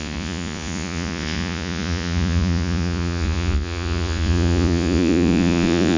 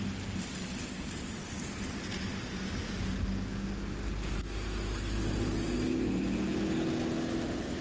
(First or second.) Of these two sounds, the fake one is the first